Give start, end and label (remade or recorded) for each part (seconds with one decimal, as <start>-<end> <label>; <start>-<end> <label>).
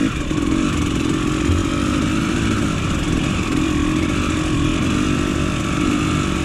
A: 0.0-6.4 remade